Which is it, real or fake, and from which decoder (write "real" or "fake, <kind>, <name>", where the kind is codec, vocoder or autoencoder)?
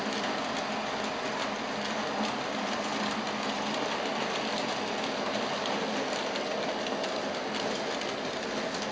real